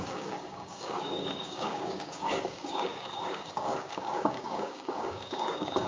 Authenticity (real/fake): fake